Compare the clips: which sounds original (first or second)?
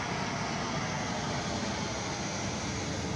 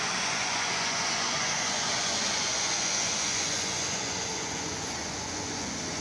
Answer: first